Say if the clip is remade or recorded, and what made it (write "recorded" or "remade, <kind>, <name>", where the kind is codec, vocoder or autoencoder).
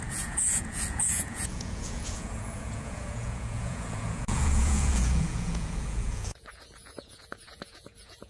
remade, vocoder, Vocos